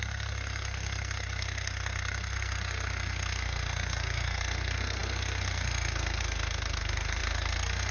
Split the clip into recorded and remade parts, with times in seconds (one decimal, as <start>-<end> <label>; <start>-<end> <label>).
0.0-7.9 remade

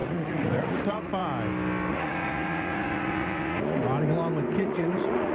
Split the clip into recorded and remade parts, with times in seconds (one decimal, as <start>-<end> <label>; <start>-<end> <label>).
0.0-1.2 remade; 1.2-1.9 recorded; 1.9-3.8 remade; 3.8-4.6 recorded; 4.6-5.3 remade

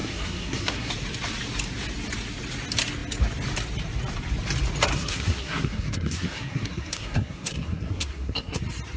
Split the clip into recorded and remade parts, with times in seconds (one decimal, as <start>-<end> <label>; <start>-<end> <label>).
0.0-0.9 remade; 0.9-4.9 recorded; 4.9-8.6 remade; 8.6-9.0 recorded

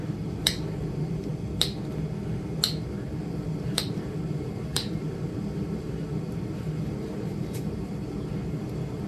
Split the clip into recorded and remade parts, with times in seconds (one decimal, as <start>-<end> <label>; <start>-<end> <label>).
0.0-1.3 remade; 1.3-3.2 recorded; 3.2-9.1 remade